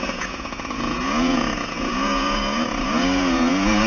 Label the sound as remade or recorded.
remade